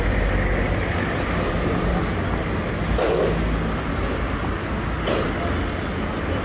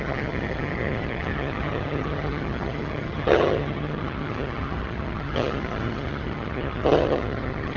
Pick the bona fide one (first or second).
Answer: first